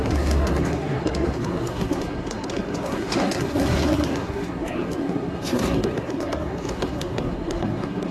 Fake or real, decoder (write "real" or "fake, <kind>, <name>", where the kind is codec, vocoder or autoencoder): fake, codec, SNAC